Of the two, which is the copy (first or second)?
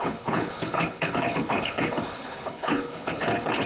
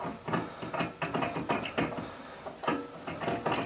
first